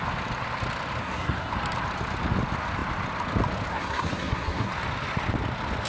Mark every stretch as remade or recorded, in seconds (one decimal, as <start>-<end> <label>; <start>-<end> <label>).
0.0-1.0 recorded; 1.0-1.5 remade; 1.5-3.7 recorded; 3.7-4.7 remade; 4.7-5.9 recorded